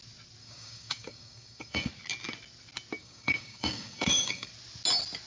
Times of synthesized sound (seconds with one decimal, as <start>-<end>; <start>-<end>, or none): 0.4-1.9; 3.0-4.5